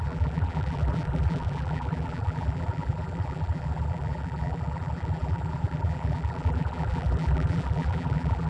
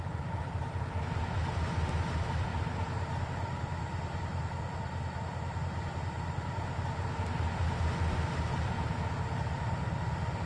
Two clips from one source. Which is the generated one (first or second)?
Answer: first